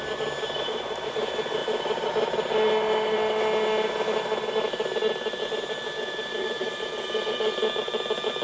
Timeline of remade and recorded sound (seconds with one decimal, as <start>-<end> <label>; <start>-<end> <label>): 0.0-8.4 recorded